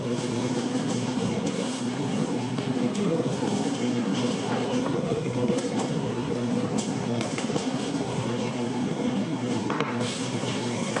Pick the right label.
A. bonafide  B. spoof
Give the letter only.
B